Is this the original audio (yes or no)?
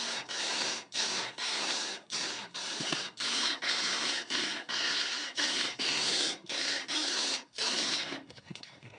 no